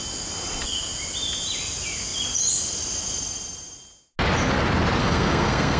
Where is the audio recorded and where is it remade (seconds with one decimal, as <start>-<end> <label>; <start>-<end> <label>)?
0.0-5.0 recorded; 5.0-5.8 remade